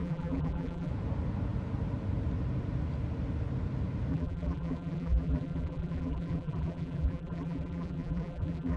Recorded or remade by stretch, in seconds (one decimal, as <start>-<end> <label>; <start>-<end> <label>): 0.0-0.9 remade; 0.9-4.1 recorded; 4.1-8.8 remade